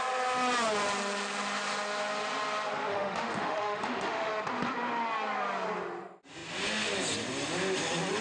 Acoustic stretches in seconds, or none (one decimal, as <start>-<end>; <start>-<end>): 0.0-2.9; 4.3-8.2